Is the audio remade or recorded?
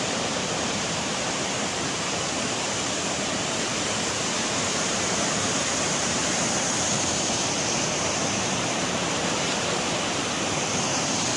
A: remade